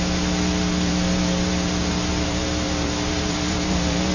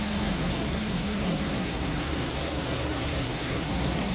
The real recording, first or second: first